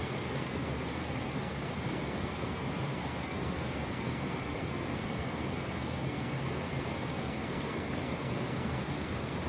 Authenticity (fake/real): fake